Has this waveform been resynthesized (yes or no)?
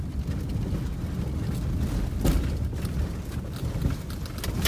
no